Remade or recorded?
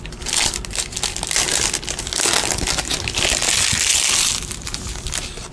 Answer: recorded